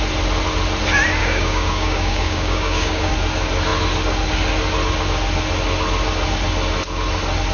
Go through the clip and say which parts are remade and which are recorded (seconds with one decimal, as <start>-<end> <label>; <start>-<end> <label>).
0.0-1.2 recorded; 1.2-3.1 remade; 3.1-7.5 recorded